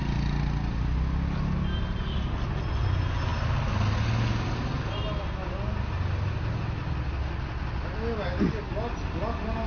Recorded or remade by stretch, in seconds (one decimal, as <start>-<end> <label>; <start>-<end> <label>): 0.0-9.7 recorded